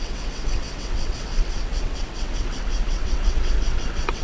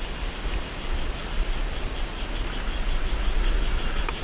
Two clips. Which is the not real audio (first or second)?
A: first